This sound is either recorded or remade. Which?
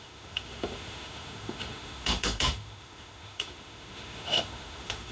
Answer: remade